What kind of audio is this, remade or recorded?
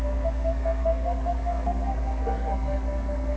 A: remade